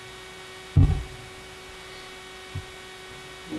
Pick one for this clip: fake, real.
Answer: real